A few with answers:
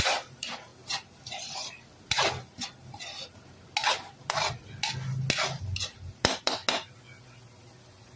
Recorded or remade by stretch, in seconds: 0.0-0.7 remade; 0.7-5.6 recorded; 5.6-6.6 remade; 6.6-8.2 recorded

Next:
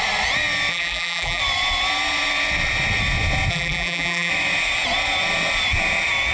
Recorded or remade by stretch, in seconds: 0.0-0.7 recorded; 0.7-1.4 remade; 1.4-3.5 recorded; 3.5-4.3 remade; 4.3-6.3 recorded

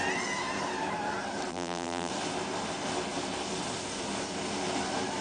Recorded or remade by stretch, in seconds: 0.0-1.5 recorded; 1.5-2.1 remade; 2.1-5.2 recorded

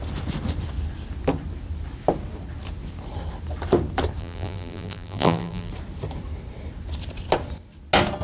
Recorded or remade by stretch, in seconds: 0.0-4.2 recorded; 4.2-5.7 remade; 5.7-8.2 recorded